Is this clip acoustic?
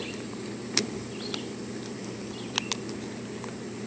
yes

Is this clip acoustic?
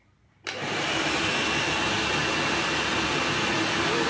yes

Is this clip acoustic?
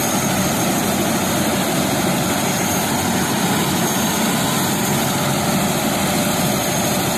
yes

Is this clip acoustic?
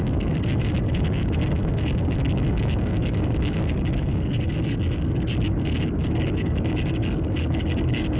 no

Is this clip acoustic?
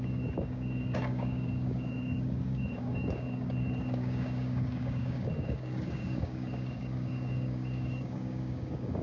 no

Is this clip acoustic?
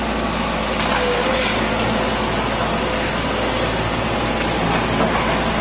yes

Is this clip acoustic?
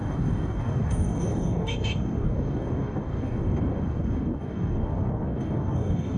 no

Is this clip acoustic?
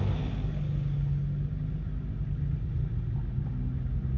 yes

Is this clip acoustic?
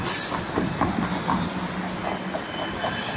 yes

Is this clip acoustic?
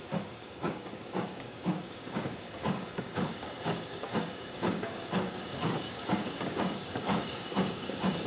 no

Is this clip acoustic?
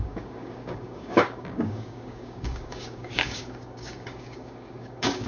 no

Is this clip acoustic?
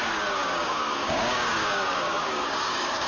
no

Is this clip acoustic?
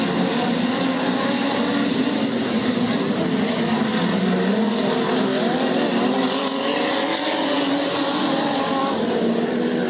yes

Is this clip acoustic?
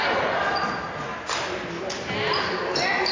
yes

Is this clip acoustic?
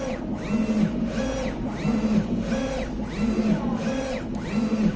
yes